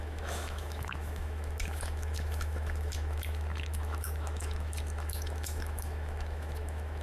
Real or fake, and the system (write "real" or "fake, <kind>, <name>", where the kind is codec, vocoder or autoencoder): fake, autoencoder, DAC-VAE